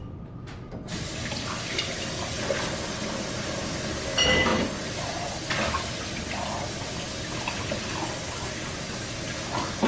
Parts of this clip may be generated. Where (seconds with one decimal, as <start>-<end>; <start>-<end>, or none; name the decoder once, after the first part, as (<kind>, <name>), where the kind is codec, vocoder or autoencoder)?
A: none